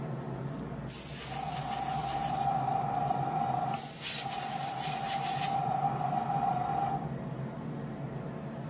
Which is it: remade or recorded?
recorded